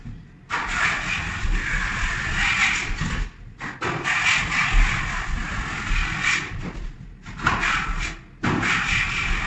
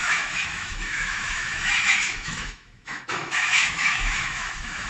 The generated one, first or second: second